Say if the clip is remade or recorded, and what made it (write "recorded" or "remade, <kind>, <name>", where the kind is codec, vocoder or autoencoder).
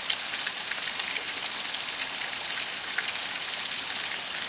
recorded